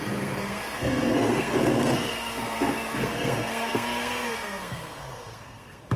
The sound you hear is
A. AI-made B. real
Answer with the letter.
A